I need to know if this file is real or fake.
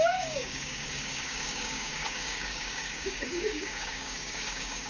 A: fake